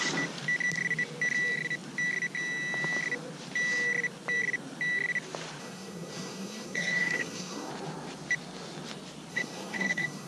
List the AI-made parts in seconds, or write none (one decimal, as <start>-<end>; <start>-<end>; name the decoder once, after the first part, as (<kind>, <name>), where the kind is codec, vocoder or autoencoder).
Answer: 5.6-7.7 (codec, SNAC); 9.3-10.3